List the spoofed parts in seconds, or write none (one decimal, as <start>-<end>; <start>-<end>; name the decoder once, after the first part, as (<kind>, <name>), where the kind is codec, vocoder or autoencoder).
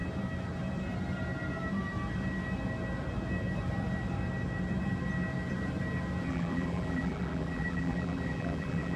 6.3-9.0 (vocoder, BigVGAN v2)